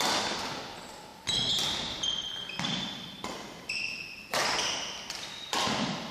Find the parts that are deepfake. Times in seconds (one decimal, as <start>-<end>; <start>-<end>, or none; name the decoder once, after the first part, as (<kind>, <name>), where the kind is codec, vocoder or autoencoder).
none